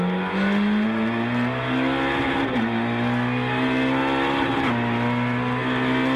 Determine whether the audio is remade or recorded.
recorded